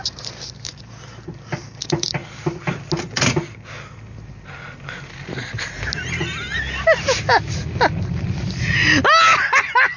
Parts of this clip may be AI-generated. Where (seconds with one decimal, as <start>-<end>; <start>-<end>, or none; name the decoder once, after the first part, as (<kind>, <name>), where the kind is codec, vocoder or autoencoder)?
none